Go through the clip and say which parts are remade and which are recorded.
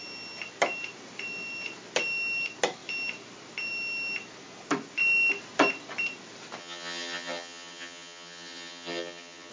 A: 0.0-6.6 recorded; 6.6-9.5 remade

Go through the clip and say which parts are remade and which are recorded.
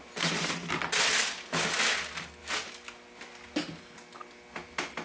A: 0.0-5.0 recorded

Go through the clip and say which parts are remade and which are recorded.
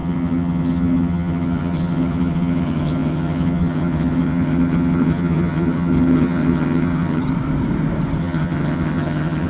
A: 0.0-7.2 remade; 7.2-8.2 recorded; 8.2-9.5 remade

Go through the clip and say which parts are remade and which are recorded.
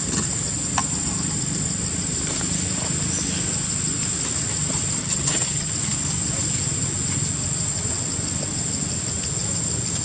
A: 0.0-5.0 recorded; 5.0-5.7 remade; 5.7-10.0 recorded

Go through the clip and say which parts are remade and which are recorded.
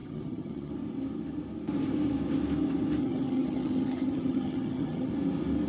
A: 0.0-0.7 remade; 0.7-3.0 recorded; 3.0-5.1 remade; 5.1-5.7 recorded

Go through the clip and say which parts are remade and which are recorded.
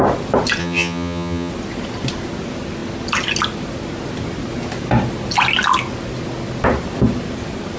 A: 0.0-0.6 recorded; 0.6-1.5 remade; 1.5-7.8 recorded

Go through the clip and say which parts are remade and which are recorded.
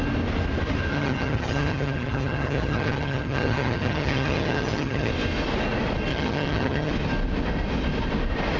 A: 0.0-0.9 recorded; 0.9-5.1 remade; 5.1-6.1 recorded; 6.1-6.9 remade; 6.9-8.6 recorded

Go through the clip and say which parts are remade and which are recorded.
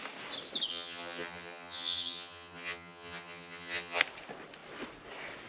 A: 0.0-0.7 recorded; 0.7-4.0 remade; 4.0-5.5 recorded